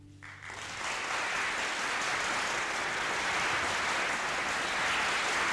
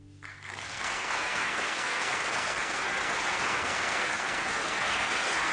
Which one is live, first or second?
first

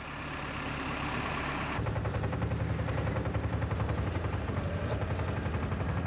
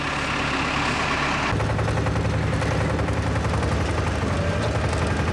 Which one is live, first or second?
second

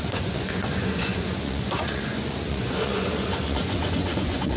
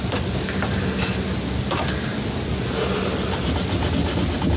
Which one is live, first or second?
second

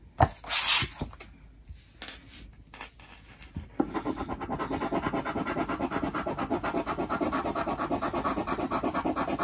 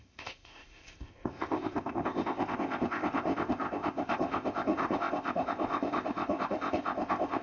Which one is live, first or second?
first